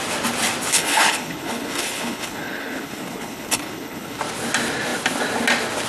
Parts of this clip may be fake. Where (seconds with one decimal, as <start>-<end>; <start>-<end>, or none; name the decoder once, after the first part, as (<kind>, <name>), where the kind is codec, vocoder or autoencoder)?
0.7-4.2 (codec, HILCodec)